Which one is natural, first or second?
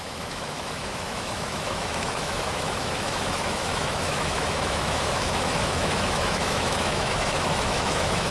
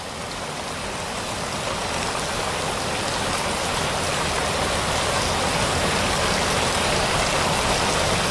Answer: second